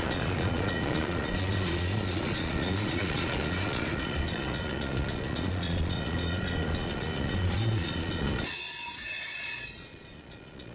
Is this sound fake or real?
fake